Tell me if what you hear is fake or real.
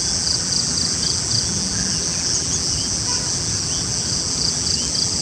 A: fake